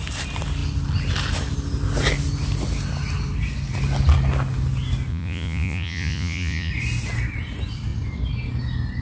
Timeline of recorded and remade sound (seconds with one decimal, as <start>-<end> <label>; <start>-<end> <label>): 0.0-5.1 recorded; 5.1-6.7 remade; 6.7-9.0 recorded